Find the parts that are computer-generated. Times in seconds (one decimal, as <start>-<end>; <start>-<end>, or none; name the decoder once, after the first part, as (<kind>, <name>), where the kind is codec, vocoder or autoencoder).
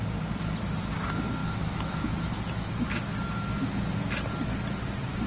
1.4-2.7 (autoencoder, DAC-VAE); 3.1-3.7